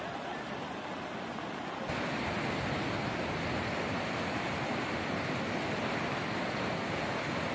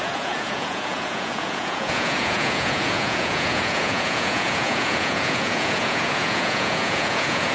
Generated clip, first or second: second